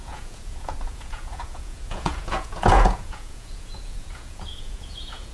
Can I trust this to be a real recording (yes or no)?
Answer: no